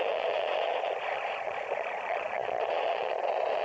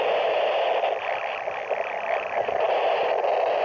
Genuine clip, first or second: second